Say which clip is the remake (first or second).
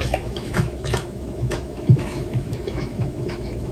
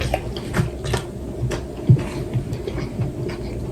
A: first